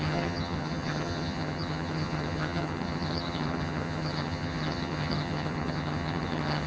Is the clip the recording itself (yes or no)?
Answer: no